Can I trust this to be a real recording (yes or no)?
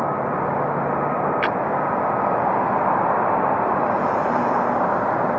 yes